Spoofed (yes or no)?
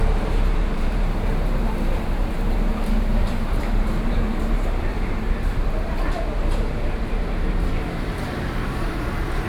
yes